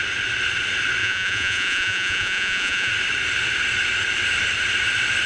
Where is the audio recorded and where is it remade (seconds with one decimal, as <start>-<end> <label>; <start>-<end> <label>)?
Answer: 0.0-1.0 recorded; 1.0-2.9 remade; 2.9-5.3 recorded